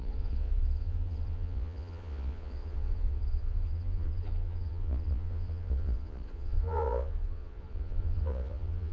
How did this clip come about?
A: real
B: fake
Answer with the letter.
B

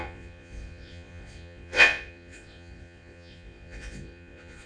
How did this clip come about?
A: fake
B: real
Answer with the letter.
A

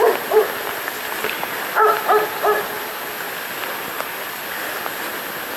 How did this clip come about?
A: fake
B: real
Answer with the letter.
B